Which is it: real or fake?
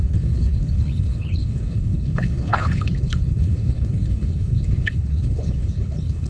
fake